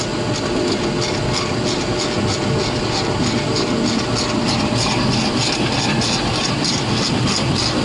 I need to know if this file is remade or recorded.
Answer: recorded